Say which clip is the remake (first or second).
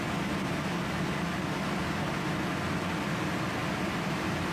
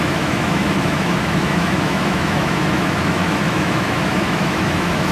second